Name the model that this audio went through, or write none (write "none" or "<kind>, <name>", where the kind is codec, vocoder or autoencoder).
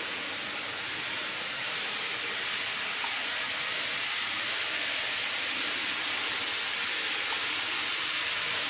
none